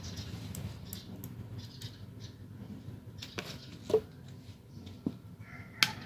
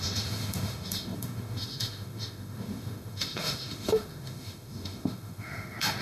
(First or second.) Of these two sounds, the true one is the first